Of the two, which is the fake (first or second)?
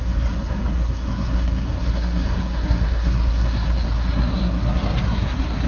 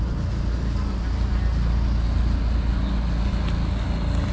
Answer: first